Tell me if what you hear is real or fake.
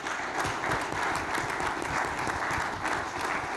real